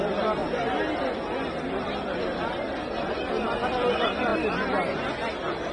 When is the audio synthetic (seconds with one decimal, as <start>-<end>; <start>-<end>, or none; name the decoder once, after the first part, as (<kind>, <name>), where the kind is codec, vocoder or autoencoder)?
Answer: none